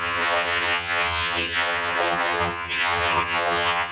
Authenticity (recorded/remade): remade